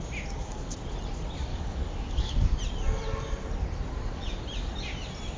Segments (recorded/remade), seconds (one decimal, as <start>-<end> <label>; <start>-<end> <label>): 0.0-1.5 recorded; 1.5-2.6 remade; 2.6-5.4 recorded